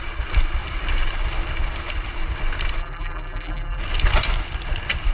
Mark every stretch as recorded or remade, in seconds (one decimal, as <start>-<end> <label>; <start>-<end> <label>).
0.0-2.8 recorded; 2.8-3.8 remade; 3.8-5.1 recorded